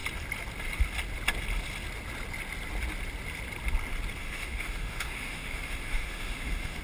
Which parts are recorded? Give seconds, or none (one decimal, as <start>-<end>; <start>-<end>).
0.0-4.2